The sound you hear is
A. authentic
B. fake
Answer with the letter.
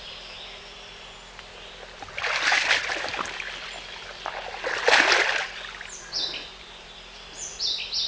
A